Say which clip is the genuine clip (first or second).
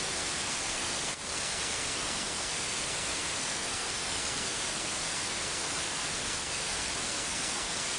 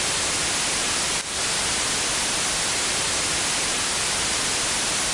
second